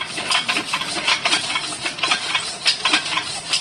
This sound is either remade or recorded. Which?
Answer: remade